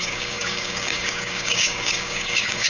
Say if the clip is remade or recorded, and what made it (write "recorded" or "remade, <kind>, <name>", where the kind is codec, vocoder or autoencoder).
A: remade, codec, DAC